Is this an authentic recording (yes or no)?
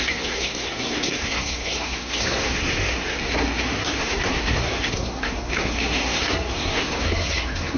no